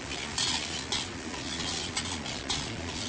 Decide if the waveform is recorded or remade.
remade